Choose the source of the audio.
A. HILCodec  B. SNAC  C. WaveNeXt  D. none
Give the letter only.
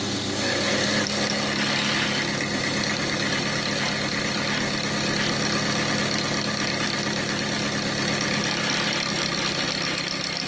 D